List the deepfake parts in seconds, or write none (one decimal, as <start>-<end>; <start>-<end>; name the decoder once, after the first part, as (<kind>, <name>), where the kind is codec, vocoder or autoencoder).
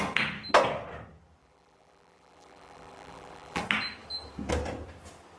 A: 1.4-3.6 (vocoder, BigVGAN v2)